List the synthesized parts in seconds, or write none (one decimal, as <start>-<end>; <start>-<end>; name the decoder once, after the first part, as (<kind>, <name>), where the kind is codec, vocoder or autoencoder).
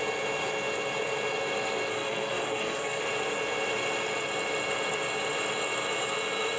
1.9-3.0 (codec, SNAC)